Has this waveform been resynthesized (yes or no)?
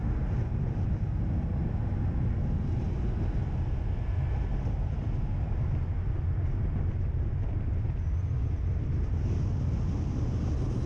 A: no